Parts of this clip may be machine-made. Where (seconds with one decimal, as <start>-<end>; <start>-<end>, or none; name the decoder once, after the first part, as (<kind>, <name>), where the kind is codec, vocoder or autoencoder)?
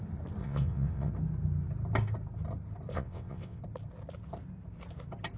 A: 0.4-1.1 (vocoder, WaveNeXt); 2.9-3.6